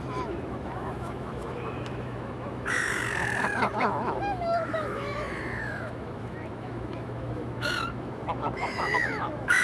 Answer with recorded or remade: remade